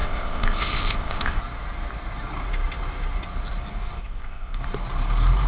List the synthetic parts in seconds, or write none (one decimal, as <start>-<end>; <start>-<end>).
0.0-1.4; 4.0-4.6

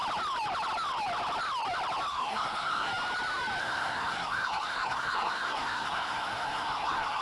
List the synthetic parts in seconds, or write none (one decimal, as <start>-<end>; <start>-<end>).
2.1-2.9; 3.6-7.2

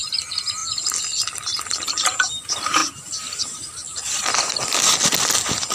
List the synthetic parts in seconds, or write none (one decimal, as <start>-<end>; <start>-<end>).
none

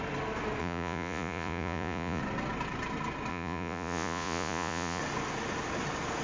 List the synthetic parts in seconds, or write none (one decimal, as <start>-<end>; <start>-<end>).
0.6-2.2; 3.3-5.0

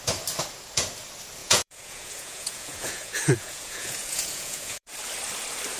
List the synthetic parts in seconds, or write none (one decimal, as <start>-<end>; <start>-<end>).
1.4-4.9

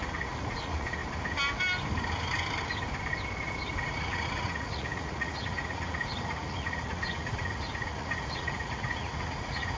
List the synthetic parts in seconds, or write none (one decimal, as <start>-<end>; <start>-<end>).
0.0-1.0; 3.8-9.8

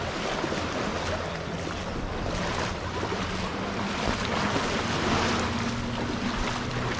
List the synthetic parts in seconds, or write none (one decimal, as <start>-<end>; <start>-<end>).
none

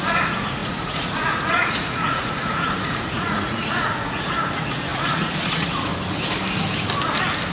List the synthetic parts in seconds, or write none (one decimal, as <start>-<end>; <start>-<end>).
0.0-5.9